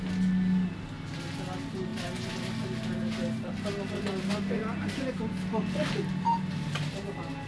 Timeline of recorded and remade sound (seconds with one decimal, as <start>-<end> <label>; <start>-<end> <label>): 0.0-7.5 recorded